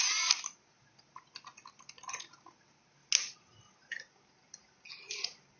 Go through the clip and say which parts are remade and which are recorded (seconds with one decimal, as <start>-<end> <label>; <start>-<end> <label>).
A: 0.0-5.6 recorded